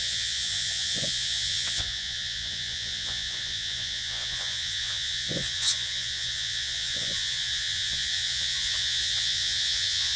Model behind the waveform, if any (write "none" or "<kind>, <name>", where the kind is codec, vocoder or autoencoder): vocoder, Vocos